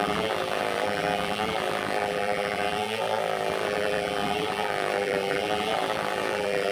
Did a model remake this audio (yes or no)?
yes